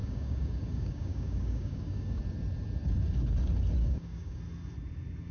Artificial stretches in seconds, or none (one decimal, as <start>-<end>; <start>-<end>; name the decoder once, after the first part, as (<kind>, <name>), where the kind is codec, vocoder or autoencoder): 0.0-2.2 (codec, DAC); 3.8-4.4